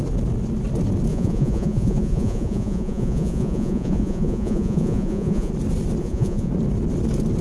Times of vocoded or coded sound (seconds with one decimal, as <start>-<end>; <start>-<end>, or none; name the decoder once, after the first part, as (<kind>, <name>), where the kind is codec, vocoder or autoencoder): 1.1-5.5 (vocoder, Vocos); 6.0-6.5